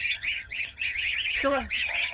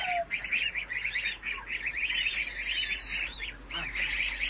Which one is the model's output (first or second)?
first